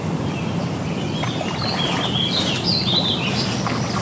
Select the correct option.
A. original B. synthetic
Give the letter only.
A